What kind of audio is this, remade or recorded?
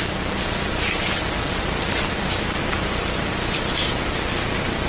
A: recorded